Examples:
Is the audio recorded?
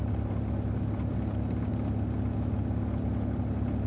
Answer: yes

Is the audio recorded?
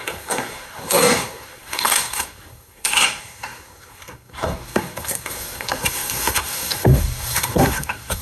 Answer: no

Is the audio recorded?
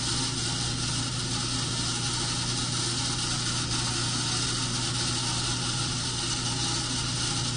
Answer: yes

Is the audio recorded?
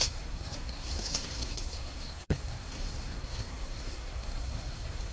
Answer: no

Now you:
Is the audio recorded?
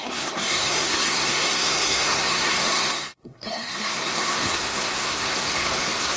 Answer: no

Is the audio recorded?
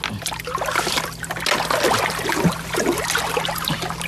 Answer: yes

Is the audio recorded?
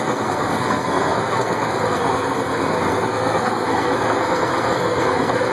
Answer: no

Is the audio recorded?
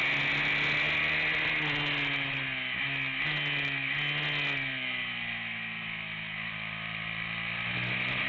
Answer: yes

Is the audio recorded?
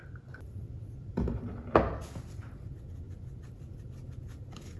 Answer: yes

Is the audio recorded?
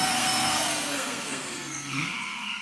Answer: no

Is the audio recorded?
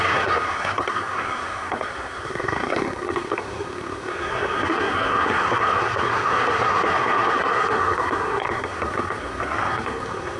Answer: no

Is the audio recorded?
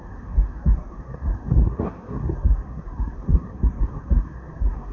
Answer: no